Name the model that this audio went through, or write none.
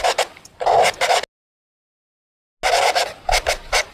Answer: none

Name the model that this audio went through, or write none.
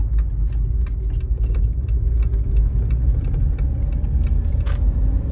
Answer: none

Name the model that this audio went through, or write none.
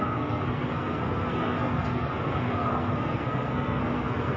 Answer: codec, SNAC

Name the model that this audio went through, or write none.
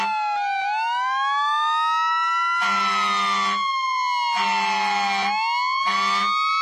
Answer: none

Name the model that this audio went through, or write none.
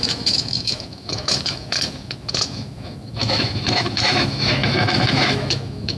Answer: autoencoder, DAC-VAE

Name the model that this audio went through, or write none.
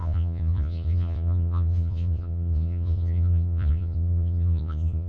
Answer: vocoder, Vocos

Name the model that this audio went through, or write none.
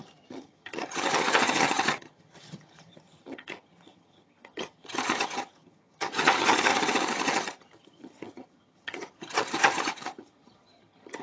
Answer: vocoder, HiFi-GAN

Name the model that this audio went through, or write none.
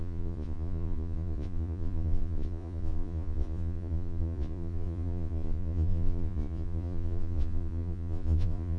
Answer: vocoder, Vocos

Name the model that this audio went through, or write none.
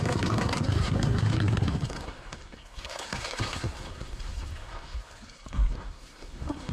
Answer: codec, SNAC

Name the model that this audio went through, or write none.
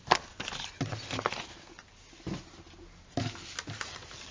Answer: none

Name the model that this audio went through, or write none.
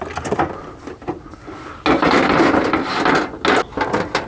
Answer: none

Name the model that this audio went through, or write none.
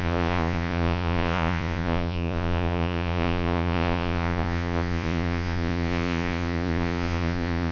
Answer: vocoder, Vocos